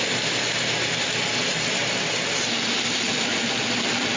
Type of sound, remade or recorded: recorded